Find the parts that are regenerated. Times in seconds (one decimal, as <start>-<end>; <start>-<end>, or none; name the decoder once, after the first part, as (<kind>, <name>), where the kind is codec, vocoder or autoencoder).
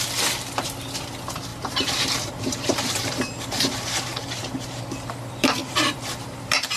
1.5-4.8 (vocoder, BigVGAN v2); 5.6-6.8